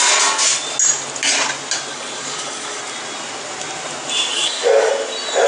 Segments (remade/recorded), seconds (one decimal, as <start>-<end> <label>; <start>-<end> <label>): 0.0-1.9 recorded; 1.9-2.8 remade; 2.8-4.3 recorded; 4.3-4.9 remade; 4.9-5.5 recorded